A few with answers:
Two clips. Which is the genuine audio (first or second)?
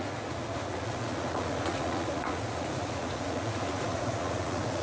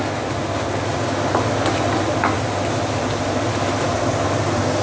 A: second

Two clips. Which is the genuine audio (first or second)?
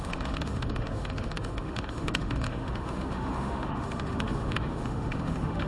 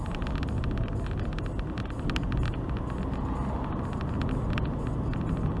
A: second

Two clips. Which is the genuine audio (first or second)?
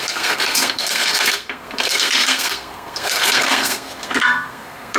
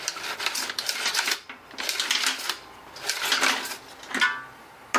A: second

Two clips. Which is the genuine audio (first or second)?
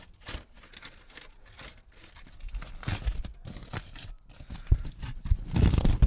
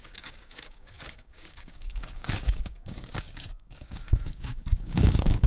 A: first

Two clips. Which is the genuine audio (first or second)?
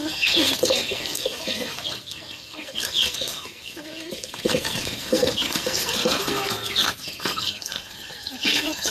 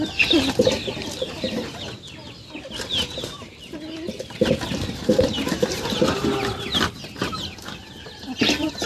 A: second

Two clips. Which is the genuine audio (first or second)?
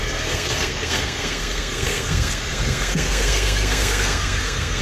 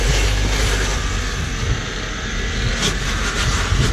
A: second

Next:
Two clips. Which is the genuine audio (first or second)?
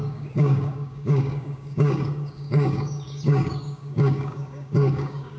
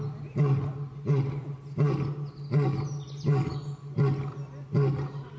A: second